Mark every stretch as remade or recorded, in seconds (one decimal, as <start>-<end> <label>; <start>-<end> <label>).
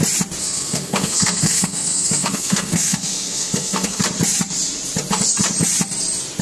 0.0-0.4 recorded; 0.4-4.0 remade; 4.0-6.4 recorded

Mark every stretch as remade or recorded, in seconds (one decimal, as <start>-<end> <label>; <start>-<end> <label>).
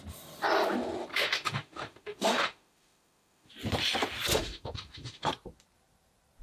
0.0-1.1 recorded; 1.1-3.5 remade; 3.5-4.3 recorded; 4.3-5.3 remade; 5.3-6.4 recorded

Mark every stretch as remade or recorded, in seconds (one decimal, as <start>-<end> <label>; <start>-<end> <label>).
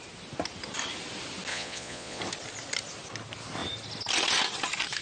0.0-1.5 recorded; 1.5-2.2 remade; 2.2-5.0 recorded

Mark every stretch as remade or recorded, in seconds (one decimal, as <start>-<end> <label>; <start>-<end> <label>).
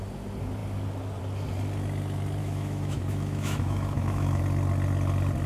0.0-2.4 recorded; 2.4-4.4 remade; 4.4-5.5 recorded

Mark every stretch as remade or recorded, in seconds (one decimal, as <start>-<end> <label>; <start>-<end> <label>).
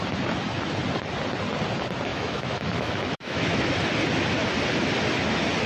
0.0-2.1 recorded; 2.1-3.7 remade; 3.7-5.7 recorded